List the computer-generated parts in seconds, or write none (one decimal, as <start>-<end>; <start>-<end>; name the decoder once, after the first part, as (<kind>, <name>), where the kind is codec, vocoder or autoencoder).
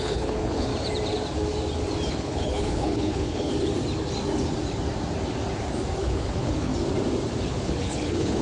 0.0-0.7 (codec, HILCodec); 2.1-3.5; 6.0-6.7; 7.5-8.4